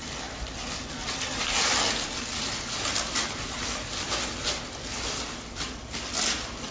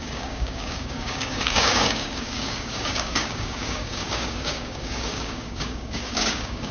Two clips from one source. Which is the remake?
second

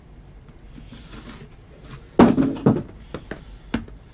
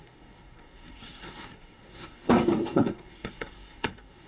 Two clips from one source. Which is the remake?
second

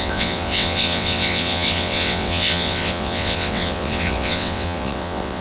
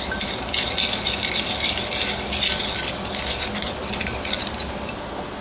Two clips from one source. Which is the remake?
first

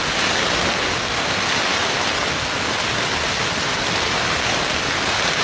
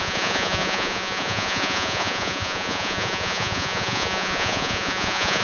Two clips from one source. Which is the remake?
second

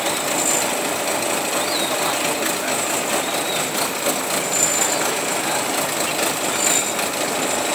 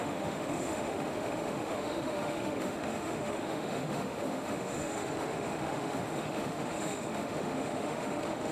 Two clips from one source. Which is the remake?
second